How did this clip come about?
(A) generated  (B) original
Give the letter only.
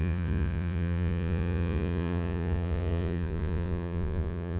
A